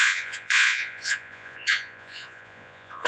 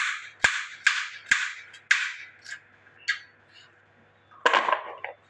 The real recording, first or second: second